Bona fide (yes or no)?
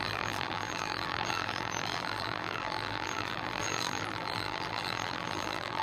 no